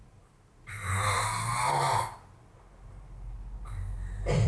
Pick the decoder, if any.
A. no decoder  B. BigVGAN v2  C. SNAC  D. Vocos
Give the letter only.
A